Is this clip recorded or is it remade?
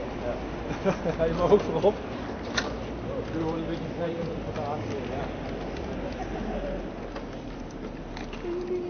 recorded